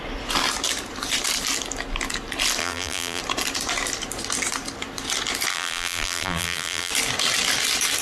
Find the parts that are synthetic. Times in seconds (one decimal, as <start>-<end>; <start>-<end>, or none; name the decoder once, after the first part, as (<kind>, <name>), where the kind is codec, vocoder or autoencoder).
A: 2.6-3.2 (vocoder, BigVGAN v2); 5.5-6.9